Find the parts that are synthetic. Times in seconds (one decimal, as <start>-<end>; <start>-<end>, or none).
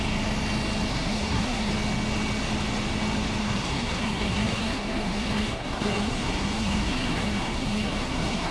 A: 0.9-1.7; 3.4-8.5